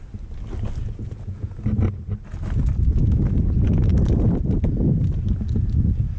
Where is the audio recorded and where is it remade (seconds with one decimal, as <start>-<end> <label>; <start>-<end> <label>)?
0.0-0.8 recorded; 0.8-1.5 remade; 1.5-3.0 recorded; 3.0-3.9 remade; 3.9-6.2 recorded